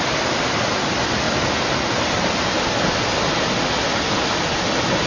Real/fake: real